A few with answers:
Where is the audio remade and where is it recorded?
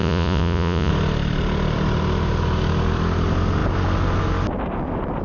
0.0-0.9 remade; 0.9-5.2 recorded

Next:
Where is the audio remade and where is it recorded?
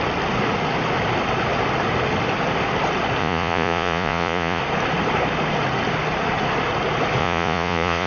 0.0-3.2 recorded; 3.2-4.6 remade; 4.6-7.2 recorded; 7.2-8.1 remade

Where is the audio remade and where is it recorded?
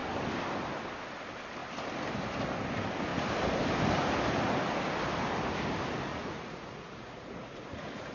0.0-6.1 recorded; 6.1-8.1 remade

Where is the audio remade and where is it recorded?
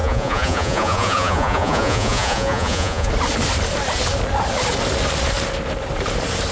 0.0-3.1 remade; 3.1-6.5 recorded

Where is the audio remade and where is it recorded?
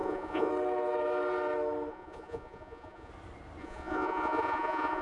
0.0-0.5 remade; 0.5-1.9 recorded; 1.9-3.1 remade; 3.1-3.6 recorded; 3.6-5.0 remade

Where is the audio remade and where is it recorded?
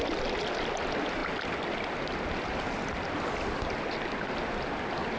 0.0-5.2 recorded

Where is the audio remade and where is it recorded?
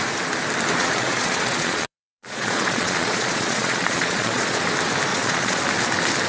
0.0-0.8 recorded; 0.8-4.6 remade; 4.6-5.1 recorded; 5.1-5.6 remade; 5.6-6.3 recorded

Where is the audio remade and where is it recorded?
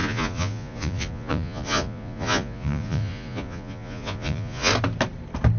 0.0-4.7 remade; 4.7-5.6 recorded